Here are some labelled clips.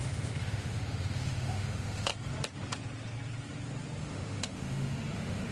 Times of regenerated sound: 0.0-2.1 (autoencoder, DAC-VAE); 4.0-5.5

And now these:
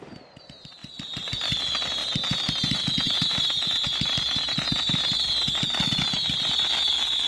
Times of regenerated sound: none